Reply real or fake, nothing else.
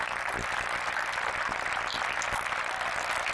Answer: real